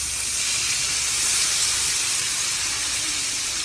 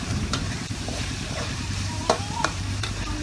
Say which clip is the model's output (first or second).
second